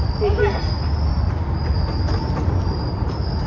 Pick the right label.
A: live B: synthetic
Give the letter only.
A